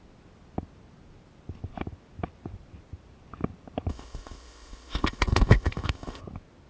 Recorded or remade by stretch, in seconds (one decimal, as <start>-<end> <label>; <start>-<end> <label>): 0.0-3.9 recorded; 3.9-6.2 remade; 6.2-6.7 recorded